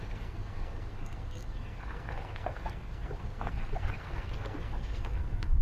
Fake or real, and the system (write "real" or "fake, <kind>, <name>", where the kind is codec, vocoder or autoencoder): fake, codec, SNAC